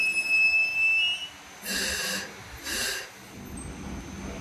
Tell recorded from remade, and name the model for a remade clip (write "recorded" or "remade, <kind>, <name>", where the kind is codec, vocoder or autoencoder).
recorded